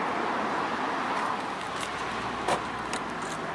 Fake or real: real